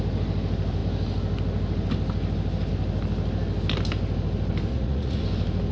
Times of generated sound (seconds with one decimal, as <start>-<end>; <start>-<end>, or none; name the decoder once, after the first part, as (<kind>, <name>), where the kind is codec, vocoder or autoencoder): 4.7-5.2 (vocoder, Vocos)